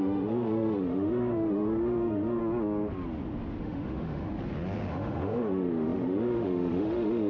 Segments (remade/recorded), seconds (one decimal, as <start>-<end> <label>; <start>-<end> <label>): 0.0-2.4 remade; 2.4-3.6 recorded; 3.6-4.3 remade; 4.3-4.9 recorded; 4.9-7.3 remade